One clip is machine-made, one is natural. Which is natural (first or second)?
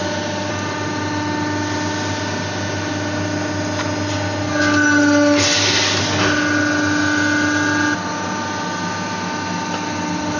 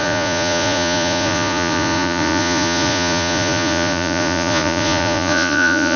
first